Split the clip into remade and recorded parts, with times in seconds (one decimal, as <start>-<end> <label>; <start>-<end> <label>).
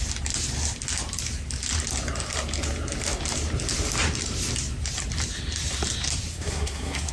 0.0-6.3 recorded; 6.3-7.1 remade